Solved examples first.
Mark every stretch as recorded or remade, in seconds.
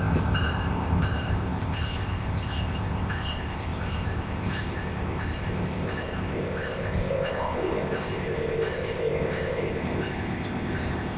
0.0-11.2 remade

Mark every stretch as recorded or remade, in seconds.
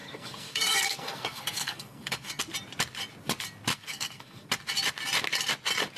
0.0-2.4 remade; 2.4-3.7 recorded; 3.7-4.5 remade; 4.5-6.0 recorded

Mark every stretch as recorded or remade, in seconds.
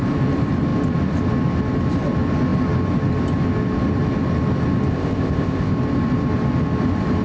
0.0-4.9 recorded; 4.9-5.7 remade; 5.7-7.2 recorded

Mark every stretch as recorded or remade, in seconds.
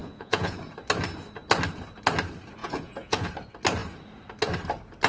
0.0-0.6 remade; 0.6-2.6 recorded; 2.6-3.3 remade; 3.3-5.1 recorded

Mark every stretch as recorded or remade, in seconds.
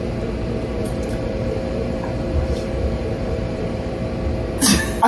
0.0-0.8 recorded; 0.8-3.9 remade; 3.9-5.1 recorded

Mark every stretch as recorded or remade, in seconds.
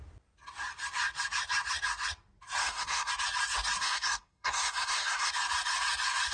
0.0-2.6 recorded; 2.6-3.1 remade; 3.1-3.8 recorded; 3.8-5.3 remade; 5.3-6.3 recorded